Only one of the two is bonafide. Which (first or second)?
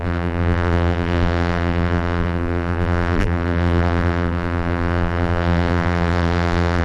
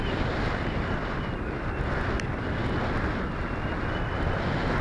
second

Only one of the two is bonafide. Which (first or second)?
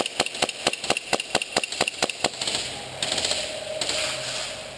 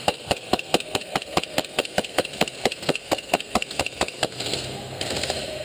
first